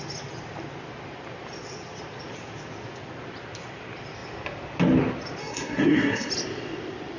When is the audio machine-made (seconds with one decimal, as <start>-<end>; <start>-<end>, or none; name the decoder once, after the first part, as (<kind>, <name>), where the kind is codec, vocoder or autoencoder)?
5.4-6.3 (codec, SNAC)

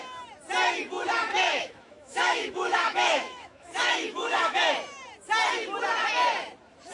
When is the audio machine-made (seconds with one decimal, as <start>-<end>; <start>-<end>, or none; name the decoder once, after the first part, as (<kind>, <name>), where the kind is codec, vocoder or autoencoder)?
1.3-4.6 (autoencoder, DAC-VAE)

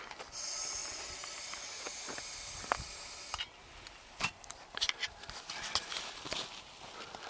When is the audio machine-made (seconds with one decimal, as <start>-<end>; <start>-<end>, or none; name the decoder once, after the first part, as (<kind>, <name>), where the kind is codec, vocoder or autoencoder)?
none

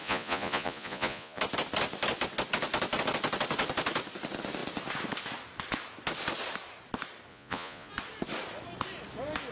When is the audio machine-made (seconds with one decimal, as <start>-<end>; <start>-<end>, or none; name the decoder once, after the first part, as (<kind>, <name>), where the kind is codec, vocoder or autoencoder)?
0.0-1.4 (vocoder, Vocos); 7.3-7.9

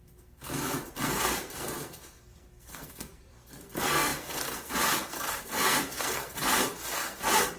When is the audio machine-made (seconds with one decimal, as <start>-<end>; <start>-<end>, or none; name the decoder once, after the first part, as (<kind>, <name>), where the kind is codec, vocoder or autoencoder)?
0.0-7.6 (codec, SNAC)